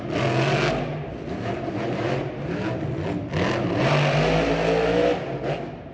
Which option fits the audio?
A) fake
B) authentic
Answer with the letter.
B